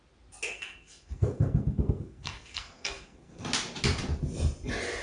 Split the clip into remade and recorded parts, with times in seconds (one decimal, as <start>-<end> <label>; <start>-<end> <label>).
0.0-0.5 recorded; 0.5-3.5 remade; 3.5-5.0 recorded